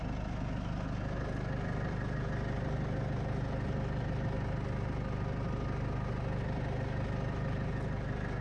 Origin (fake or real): real